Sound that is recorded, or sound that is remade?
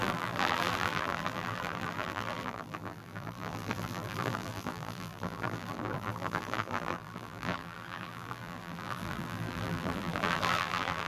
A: remade